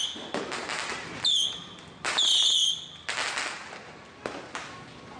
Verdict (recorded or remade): recorded